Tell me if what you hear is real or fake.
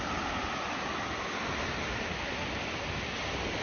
real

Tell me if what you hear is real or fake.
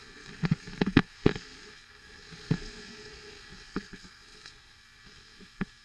fake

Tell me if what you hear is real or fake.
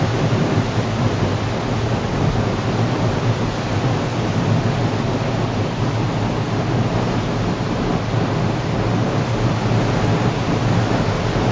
real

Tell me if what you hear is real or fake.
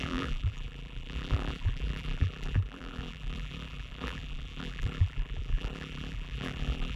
fake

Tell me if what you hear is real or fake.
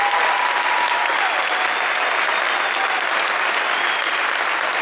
real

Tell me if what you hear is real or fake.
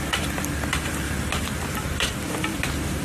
fake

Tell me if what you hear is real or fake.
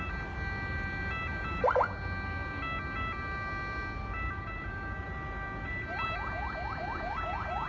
real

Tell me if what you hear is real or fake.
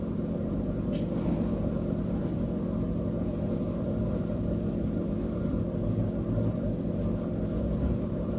fake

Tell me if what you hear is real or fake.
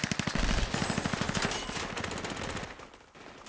real